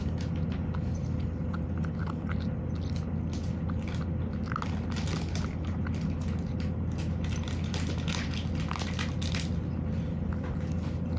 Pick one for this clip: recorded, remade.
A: recorded